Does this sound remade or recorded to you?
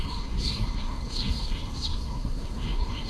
remade